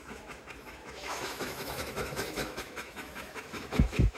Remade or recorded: remade